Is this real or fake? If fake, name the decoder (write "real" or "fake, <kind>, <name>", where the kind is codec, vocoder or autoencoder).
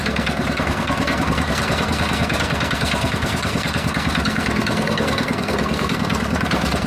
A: fake, codec, SNAC